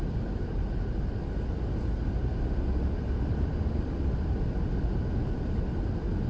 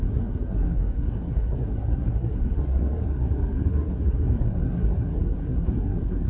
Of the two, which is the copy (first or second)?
second